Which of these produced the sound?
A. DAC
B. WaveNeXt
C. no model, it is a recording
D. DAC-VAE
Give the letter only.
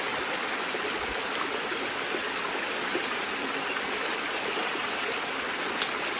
C